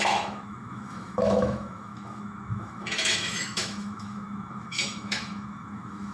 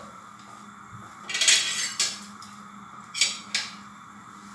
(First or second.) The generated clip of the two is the first